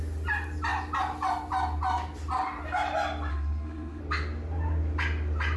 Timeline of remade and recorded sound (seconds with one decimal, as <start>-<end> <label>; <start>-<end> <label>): 0.0-3.3 recorded; 3.3-4.0 remade; 4.0-5.6 recorded